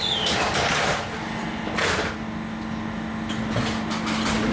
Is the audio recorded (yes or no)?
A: yes